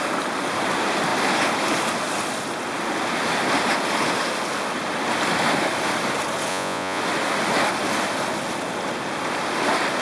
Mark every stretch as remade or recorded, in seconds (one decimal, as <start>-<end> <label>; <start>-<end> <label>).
0.0-6.5 recorded; 6.5-7.0 remade; 7.0-10.0 recorded